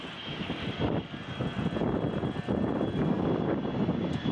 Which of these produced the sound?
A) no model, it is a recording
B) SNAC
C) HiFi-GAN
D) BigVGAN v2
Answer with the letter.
D